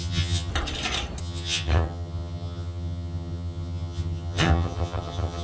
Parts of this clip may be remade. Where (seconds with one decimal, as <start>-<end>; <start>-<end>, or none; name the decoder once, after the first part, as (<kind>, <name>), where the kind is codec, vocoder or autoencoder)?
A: 0.0-0.5 (vocoder, HiFi-GAN); 1.2-5.4